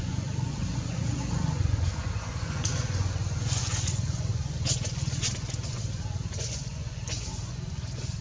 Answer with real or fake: fake